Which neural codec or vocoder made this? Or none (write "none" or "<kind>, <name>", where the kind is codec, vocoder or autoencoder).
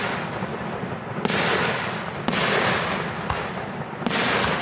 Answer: none